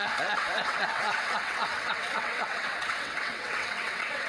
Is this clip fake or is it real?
fake